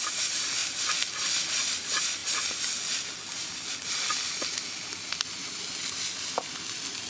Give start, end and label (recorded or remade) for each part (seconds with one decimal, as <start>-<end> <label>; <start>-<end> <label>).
0.0-7.1 recorded